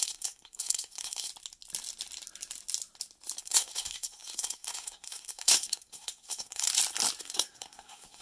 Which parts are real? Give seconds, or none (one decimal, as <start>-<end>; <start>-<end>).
1.3-3.4; 6.7-7.2